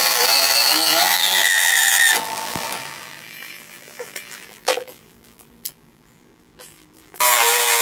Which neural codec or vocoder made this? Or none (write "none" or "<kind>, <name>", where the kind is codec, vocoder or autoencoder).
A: vocoder, BigVGAN v2